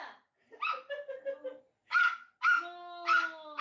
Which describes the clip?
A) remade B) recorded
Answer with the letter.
B